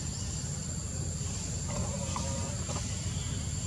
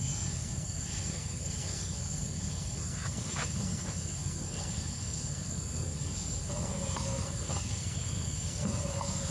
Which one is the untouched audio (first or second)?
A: first